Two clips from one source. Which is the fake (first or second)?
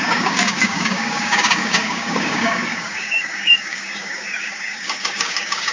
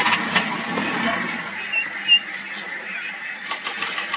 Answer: first